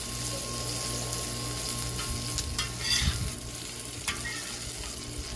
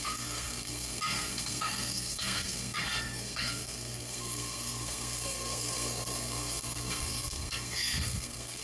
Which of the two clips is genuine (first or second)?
first